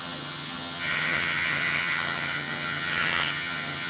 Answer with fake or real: fake